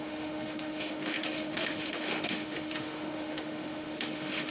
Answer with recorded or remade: remade